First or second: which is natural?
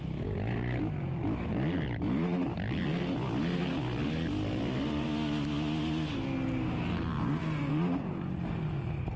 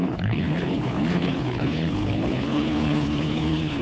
first